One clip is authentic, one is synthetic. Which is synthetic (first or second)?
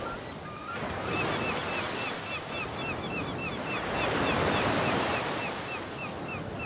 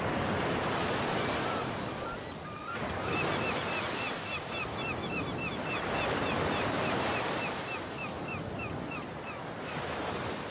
second